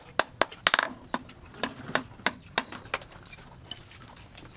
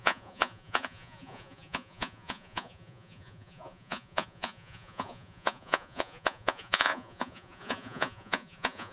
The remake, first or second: second